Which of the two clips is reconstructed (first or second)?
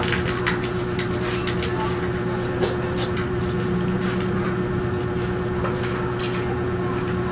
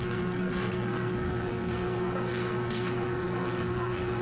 second